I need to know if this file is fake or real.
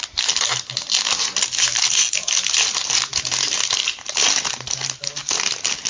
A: real